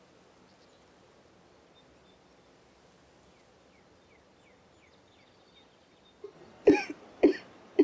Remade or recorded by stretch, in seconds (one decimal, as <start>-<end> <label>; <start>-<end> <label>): 0.0-7.8 recorded